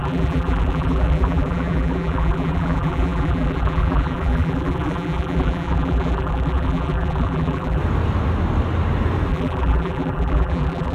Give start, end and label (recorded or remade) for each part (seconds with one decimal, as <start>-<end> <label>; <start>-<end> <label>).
0.0-7.8 remade; 7.8-9.3 recorded; 9.3-10.9 remade

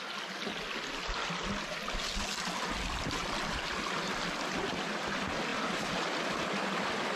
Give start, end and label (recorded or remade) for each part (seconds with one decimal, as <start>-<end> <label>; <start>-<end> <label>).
0.0-5.5 recorded; 5.5-6.2 remade; 6.2-7.2 recorded

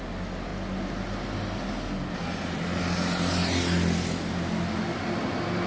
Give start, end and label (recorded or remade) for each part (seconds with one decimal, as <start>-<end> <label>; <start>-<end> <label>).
0.0-5.7 recorded